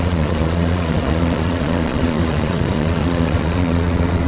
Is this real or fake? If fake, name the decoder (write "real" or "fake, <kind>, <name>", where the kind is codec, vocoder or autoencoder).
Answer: fake, vocoder, Vocos